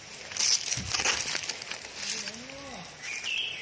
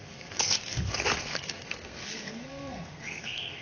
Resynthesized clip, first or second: second